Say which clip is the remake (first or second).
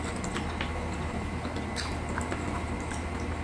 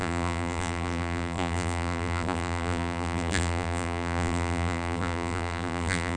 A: second